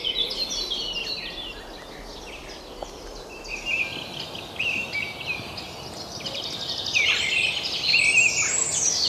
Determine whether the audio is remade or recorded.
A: recorded